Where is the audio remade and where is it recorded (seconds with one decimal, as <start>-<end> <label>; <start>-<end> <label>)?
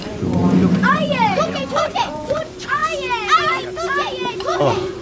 0.0-2.8 remade; 2.8-4.3 recorded; 4.3-5.0 remade